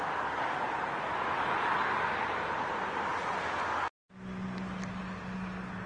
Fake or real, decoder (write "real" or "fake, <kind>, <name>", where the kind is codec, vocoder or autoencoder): real